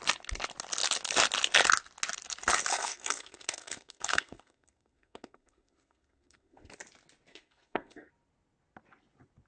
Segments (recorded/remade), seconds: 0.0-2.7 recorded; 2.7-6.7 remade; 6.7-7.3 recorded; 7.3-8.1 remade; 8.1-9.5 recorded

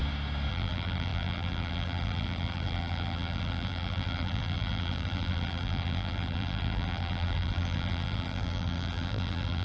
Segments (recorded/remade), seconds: 0.0-0.5 recorded; 0.5-9.6 remade

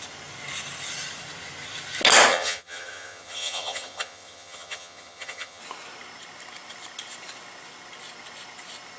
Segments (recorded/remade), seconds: 0.0-2.3 recorded; 2.3-5.6 remade; 5.6-9.0 recorded

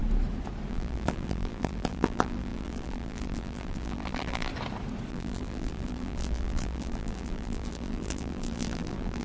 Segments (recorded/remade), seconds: 0.0-0.7 recorded; 0.7-4.5 remade; 4.5-5.1 recorded; 5.1-9.2 remade